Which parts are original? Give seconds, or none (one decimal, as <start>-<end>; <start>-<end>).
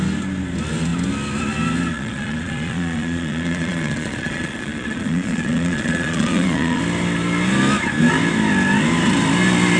0.0-1.9; 6.8-9.8